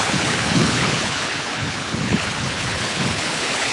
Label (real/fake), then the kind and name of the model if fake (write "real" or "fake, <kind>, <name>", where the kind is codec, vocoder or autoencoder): fake, codec, HILCodec